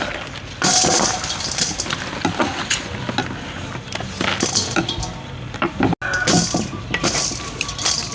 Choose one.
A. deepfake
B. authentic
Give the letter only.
B